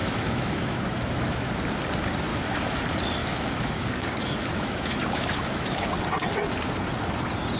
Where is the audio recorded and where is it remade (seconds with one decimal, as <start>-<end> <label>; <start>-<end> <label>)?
0.0-1.5 remade; 1.5-2.3 recorded; 2.3-2.8 remade; 2.8-3.2 recorded; 3.2-5.9 remade; 5.9-7.6 recorded